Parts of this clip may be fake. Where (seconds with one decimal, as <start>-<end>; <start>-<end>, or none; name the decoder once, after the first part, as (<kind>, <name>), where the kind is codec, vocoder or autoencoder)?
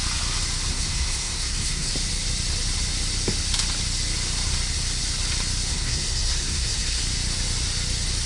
0.7-1.9 (codec, SNAC); 5.7-7.0